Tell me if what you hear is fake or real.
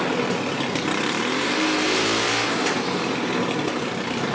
fake